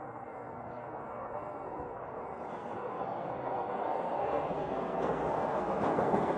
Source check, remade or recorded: remade